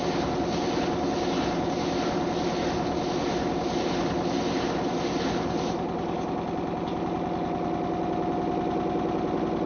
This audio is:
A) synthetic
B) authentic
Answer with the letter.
B